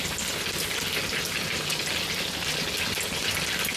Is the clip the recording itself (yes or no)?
yes